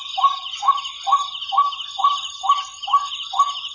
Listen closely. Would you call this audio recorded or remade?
recorded